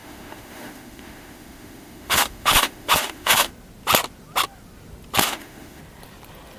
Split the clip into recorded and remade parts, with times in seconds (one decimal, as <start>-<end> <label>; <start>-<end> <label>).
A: 0.0-3.5 remade; 3.5-5.2 recorded; 5.2-5.8 remade; 5.8-6.6 recorded